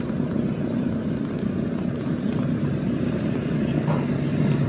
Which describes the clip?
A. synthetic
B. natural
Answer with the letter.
B